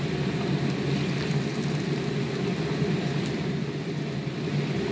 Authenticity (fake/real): real